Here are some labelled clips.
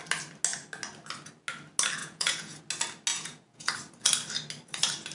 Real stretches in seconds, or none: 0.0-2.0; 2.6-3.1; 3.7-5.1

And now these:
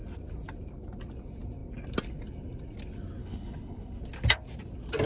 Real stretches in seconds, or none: 0.0-3.2; 4.0-5.1

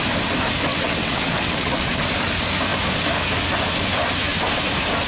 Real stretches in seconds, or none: 0.0-0.7; 2.0-5.1

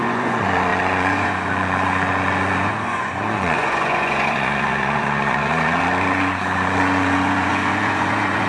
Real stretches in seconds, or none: none

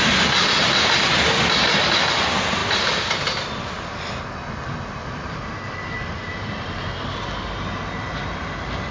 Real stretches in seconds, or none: 0.0-1.6; 2.1-2.6; 4.1-5.0; 6.9-8.9